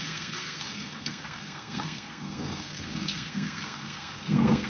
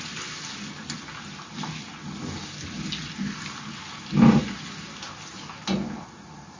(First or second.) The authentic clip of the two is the second